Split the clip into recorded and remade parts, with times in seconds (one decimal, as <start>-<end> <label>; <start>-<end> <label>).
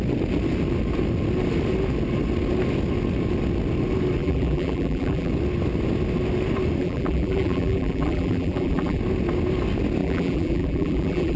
0.0-4.2 recorded; 4.2-5.3 remade; 5.3-6.8 recorded; 6.8-9.0 remade; 9.0-10.0 recorded; 10.0-11.4 remade